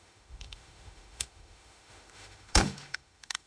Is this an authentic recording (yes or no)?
no